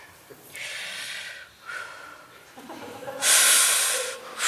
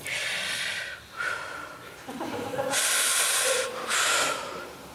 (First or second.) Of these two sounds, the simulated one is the second